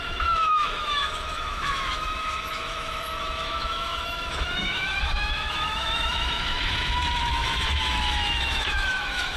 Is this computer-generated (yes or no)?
yes